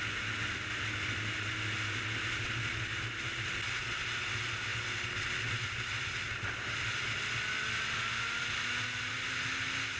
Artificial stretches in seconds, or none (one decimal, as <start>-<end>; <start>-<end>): none